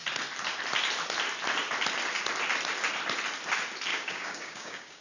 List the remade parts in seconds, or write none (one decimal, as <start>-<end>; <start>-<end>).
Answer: 3.9-5.0